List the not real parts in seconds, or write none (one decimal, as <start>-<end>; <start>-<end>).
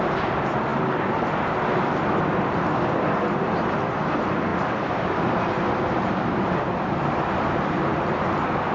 none